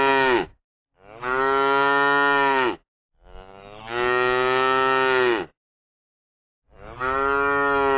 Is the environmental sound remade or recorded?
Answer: recorded